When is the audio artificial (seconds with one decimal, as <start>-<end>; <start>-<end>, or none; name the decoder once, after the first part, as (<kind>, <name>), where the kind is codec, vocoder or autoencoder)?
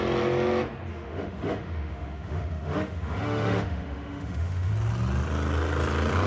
0.9-4.7 (autoencoder, DAC-VAE)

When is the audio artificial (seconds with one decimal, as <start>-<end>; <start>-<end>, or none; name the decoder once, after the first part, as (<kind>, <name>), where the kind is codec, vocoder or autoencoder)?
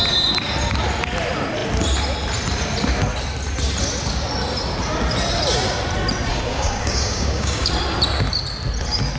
6.3-7.7 (codec, DAC)